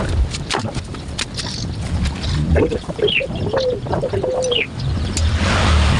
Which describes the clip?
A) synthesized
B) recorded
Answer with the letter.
B